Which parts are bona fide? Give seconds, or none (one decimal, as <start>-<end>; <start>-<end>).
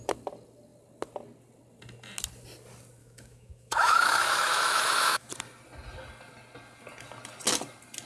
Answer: 0.0-3.0; 5.3-8.1